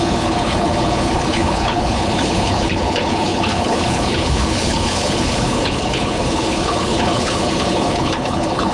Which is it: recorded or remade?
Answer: remade